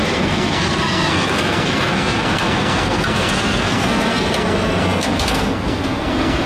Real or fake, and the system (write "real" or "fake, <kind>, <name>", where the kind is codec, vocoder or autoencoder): fake, codec, SNAC